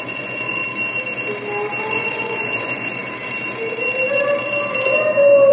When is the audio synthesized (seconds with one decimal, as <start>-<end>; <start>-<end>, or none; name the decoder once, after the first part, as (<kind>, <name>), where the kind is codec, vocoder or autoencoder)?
0.0-0.6 (vocoder, Vocos); 1.9-3.0